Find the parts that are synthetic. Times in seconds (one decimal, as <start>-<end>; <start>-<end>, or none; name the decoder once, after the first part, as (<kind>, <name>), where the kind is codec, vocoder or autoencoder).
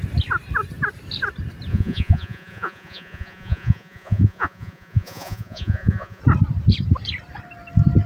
1.7-6.2 (vocoder, Vocos)